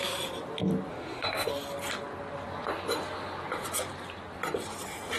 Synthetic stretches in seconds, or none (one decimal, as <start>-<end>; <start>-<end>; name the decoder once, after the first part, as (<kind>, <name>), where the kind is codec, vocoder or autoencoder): 0.9-1.5 (autoencoder, DAC-VAE)

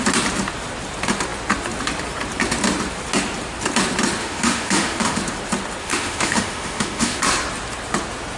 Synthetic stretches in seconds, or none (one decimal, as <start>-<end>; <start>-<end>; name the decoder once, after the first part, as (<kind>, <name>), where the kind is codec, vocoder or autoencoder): 4.2-5.2 (autoencoder, DAC-VAE); 5.8-7.2

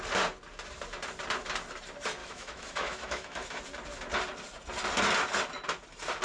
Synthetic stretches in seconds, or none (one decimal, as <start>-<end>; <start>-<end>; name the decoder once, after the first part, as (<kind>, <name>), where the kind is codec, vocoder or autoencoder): 2.2-3.6 (autoencoder, DAC-VAE)

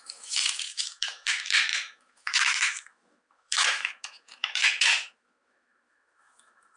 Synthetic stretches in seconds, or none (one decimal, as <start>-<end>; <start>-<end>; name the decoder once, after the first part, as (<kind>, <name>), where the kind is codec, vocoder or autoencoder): 0.0-6.8 (autoencoder, DAC-VAE)

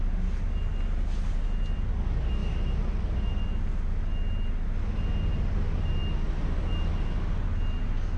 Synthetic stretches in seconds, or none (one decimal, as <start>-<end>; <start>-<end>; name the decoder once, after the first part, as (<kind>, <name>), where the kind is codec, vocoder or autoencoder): none

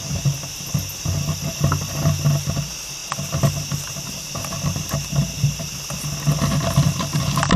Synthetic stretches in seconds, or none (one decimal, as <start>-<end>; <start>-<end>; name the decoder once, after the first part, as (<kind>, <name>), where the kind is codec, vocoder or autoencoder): none

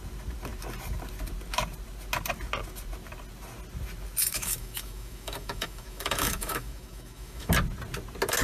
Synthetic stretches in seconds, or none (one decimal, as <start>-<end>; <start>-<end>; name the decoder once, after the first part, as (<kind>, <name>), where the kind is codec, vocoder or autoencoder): 4.2-7.5 (autoencoder, DAC-VAE)